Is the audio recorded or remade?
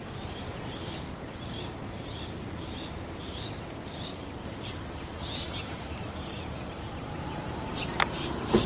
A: remade